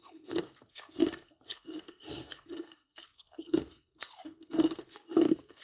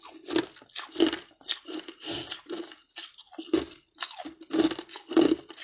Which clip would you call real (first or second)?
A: second